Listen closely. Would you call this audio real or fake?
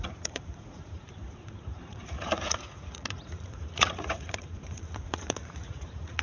fake